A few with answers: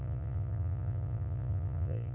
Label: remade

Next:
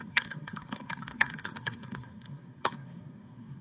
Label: remade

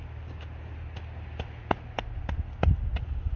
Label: recorded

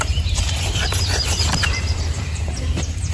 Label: remade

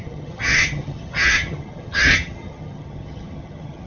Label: remade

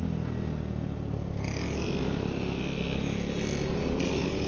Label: recorded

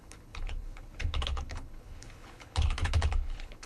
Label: remade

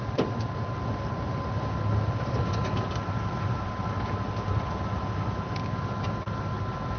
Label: recorded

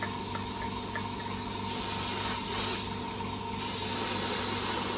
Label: recorded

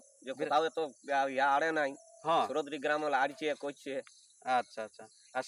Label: recorded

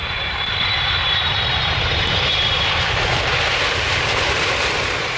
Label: remade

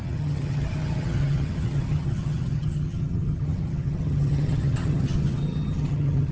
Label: remade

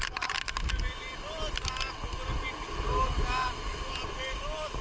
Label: recorded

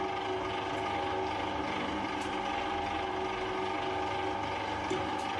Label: recorded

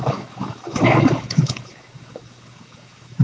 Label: remade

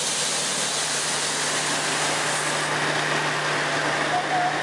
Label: recorded